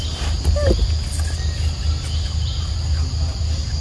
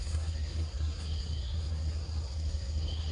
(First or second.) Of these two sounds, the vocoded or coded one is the second